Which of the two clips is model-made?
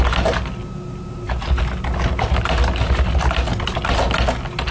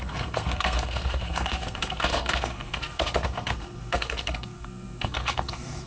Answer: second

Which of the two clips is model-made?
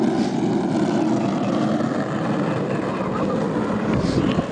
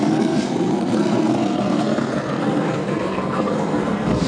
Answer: second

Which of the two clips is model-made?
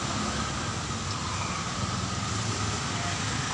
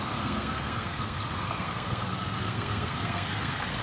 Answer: second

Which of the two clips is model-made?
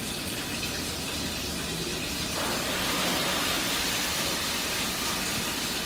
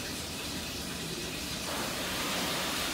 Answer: second